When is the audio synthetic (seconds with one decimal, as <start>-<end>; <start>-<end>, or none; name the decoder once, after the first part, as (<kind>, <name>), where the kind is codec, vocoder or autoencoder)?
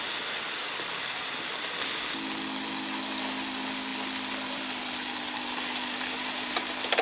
none